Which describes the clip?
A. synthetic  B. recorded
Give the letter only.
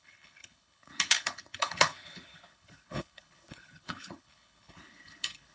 A